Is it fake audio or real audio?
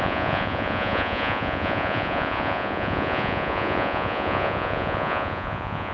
fake